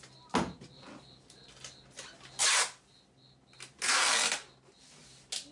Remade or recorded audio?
recorded